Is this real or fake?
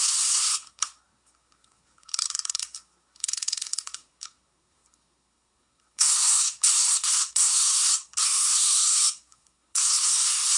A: fake